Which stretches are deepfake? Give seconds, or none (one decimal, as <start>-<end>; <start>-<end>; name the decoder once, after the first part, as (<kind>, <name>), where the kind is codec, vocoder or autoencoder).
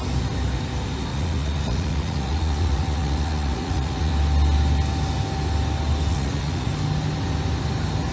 1.1-4.1 (vocoder, Vocos); 6.1-6.7